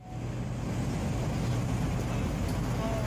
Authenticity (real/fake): real